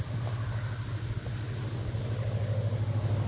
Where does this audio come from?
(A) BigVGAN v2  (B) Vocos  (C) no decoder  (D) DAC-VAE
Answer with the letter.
C